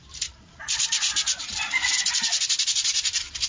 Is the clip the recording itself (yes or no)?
yes